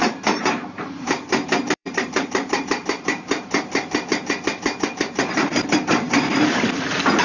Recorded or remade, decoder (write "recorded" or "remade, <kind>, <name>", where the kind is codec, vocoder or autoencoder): remade, vocoder, BigVGAN v2